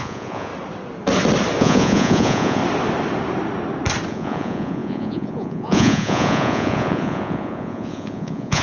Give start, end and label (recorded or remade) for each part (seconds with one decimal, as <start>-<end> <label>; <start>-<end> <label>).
0.0-0.5 remade; 0.5-1.6 recorded; 1.6-2.6 remade; 2.6-4.1 recorded; 4.1-8.6 remade